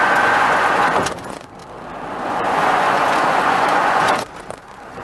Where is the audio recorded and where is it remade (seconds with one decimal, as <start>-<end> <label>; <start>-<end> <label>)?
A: 0.0-1.6 remade; 1.6-2.1 recorded; 2.1-5.0 remade